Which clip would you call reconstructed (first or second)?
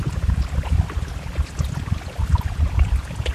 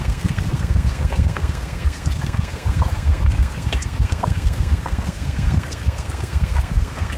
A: second